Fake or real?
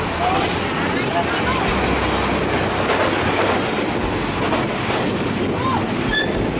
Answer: real